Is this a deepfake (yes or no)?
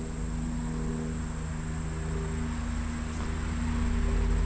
no